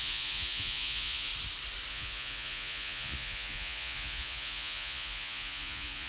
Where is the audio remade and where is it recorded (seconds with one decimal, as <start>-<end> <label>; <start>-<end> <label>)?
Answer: 0.0-1.3 remade; 1.3-1.9 recorded; 1.9-6.1 remade